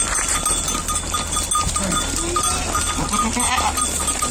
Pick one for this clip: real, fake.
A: real